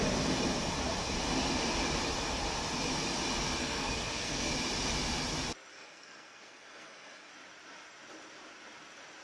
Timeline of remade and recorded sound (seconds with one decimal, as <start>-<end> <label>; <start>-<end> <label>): 0.0-3.6 recorded; 3.6-4.5 remade; 4.5-5.7 recorded; 5.7-7.3 remade; 7.3-9.2 recorded